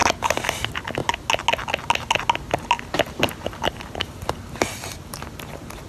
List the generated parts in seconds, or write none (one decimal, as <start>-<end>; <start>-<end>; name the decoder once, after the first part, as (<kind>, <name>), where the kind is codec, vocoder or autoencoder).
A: none